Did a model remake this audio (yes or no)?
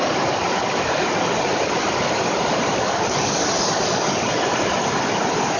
no